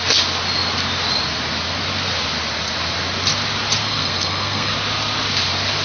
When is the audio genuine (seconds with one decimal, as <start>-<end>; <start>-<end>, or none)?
0.0-3.8; 4.7-5.8